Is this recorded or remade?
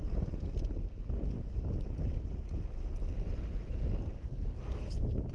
recorded